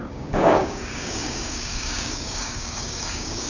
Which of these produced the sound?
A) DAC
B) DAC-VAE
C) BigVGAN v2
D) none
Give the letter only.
A